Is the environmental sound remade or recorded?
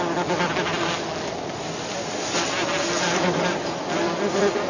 recorded